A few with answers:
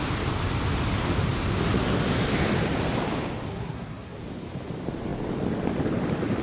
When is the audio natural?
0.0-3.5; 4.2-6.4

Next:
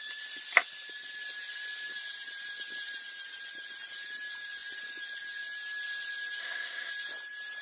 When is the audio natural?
0.0-6.4; 6.9-7.6